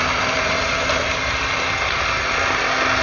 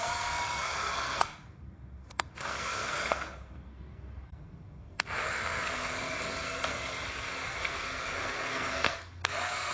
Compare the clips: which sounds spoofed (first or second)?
second